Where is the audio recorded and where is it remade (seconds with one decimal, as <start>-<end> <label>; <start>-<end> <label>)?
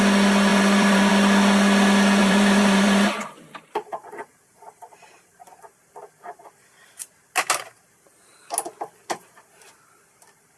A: 0.0-0.5 recorded; 0.5-1.1 remade; 1.1-2.2 recorded; 2.2-5.7 remade; 5.7-10.6 recorded